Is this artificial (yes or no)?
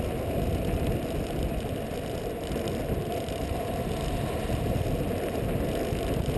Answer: no